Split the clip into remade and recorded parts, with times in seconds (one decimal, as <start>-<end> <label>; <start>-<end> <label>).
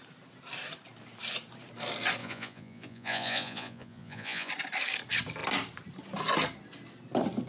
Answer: 0.0-2.2 recorded; 2.2-4.5 remade; 4.5-7.5 recorded